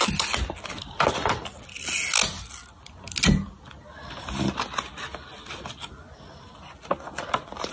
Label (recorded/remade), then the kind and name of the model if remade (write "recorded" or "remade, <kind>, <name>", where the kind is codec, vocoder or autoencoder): recorded